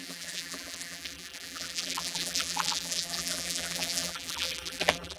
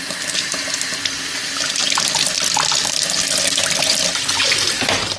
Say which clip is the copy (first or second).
first